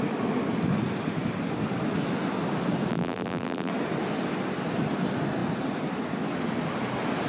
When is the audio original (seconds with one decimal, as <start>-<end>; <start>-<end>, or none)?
0.0-2.9; 3.7-7.3